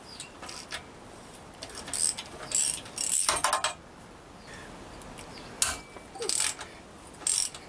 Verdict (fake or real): real